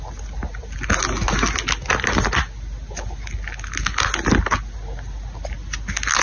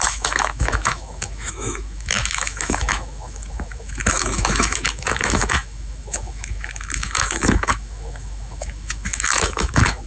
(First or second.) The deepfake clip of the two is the second